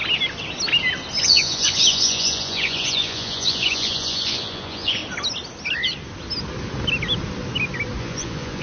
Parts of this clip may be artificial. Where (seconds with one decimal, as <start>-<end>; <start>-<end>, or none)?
1.2-5.0; 8.0-8.6

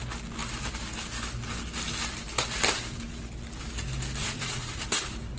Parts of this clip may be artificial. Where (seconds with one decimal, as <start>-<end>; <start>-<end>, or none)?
4.2-4.8

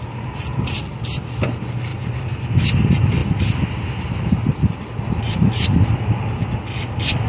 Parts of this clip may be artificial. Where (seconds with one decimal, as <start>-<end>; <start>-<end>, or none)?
none

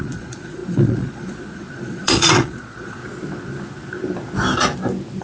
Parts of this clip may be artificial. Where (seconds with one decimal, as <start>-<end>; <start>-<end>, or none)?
0.0-3.0

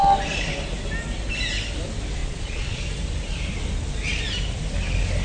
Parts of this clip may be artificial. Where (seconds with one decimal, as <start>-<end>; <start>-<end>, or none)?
2.2-2.8

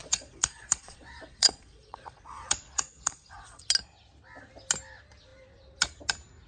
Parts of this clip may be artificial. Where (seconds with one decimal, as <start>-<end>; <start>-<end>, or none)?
0.0-3.6